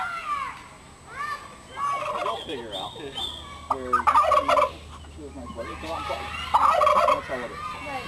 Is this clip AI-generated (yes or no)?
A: no